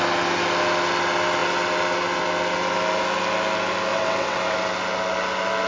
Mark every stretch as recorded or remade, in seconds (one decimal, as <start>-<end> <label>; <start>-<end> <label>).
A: 0.0-3.9 recorded; 3.9-4.4 remade; 4.4-5.7 recorded